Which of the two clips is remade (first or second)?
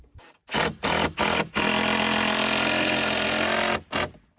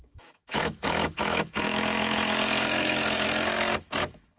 second